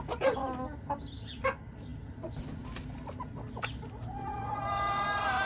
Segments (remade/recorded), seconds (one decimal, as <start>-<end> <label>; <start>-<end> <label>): 0.0-5.5 recorded

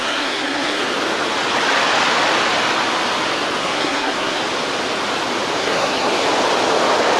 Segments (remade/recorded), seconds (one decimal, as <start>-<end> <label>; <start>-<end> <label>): 0.0-0.8 remade; 0.8-3.6 recorded; 3.6-4.4 remade; 4.4-5.6 recorded; 5.6-6.1 remade; 6.1-7.2 recorded